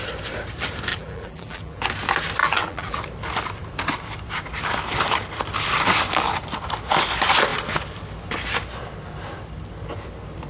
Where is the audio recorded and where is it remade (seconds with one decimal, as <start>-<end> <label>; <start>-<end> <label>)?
0.0-0.9 recorded; 0.9-1.8 remade; 1.8-2.4 recorded; 2.4-3.0 remade; 3.0-10.5 recorded